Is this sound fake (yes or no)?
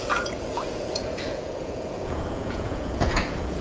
yes